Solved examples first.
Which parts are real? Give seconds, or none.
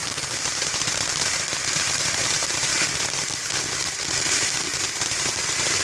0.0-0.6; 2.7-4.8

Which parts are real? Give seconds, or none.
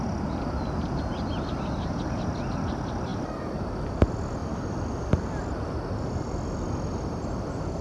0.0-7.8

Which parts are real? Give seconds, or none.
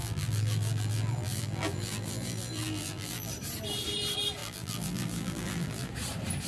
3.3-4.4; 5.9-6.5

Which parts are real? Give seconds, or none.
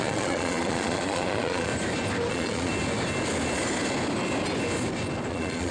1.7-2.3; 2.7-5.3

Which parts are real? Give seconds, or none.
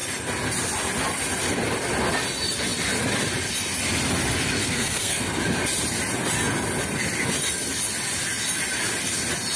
0.0-4.6; 5.4-9.6